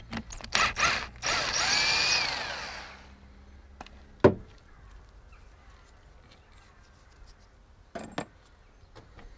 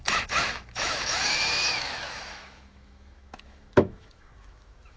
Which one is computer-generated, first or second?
second